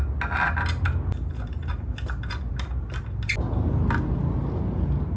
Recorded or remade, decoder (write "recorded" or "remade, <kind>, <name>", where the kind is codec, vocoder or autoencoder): recorded